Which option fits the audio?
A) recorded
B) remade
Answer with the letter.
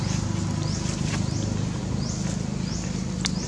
A